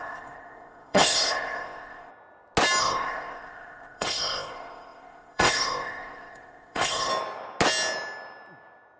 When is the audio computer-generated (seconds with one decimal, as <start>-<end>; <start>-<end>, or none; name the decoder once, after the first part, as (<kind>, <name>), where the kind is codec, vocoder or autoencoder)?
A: 0.0-2.1 (codec, ZipCodec); 2.8-7.1